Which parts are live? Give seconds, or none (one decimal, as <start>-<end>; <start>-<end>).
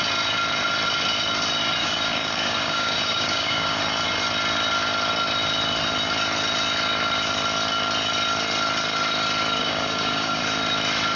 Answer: 0.0-1.8; 3.8-9.6; 10.4-11.2